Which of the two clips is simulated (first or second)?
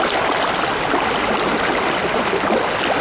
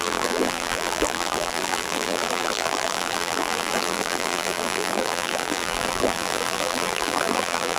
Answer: second